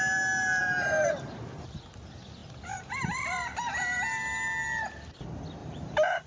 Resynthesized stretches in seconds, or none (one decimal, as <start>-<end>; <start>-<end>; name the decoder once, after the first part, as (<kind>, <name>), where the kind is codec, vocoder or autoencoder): 0.6-1.4 (vocoder, BigVGAN v2); 2.4-4.0; 5.6-6.3